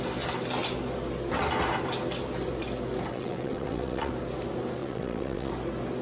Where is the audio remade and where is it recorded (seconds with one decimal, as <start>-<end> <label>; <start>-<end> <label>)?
0.0-3.1 recorded; 3.1-4.1 remade; 4.1-4.8 recorded; 4.8-5.5 remade; 5.5-6.0 recorded